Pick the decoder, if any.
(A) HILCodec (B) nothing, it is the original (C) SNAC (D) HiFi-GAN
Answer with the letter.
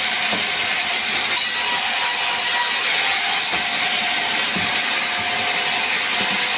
B